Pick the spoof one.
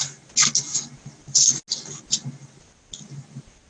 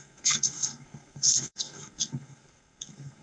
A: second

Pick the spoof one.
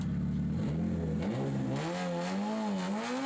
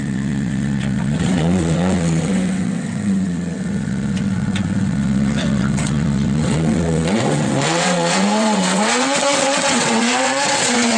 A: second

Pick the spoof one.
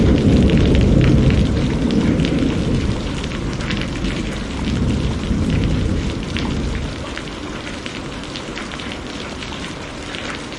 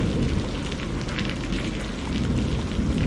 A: first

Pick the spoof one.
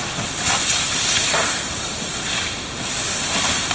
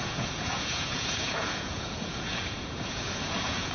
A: second